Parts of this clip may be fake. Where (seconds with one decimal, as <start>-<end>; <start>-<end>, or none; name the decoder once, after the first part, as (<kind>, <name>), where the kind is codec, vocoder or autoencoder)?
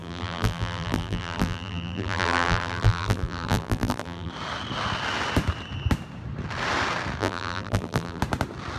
0.0-4.3 (vocoder, BigVGAN v2); 7.2-8.2